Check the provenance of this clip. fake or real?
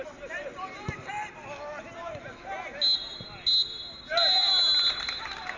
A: real